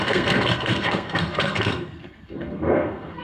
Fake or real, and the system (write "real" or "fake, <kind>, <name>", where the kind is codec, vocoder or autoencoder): fake, codec, SNAC